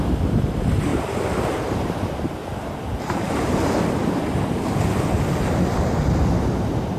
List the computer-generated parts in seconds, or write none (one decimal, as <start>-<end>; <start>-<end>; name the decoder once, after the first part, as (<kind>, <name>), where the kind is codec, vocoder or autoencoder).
0.9-1.9 (vocoder, BigVGAN v2); 2.4-3.7